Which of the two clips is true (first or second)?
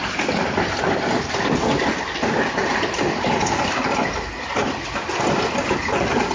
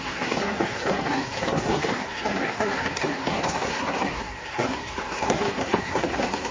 first